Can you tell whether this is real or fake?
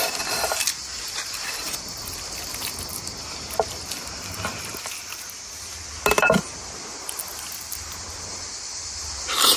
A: real